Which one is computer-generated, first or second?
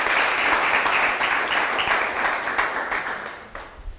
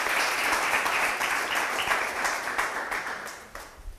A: second